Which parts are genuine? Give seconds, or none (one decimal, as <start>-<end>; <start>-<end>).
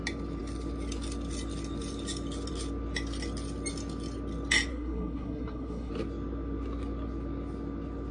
0.0-4.7; 5.9-8.1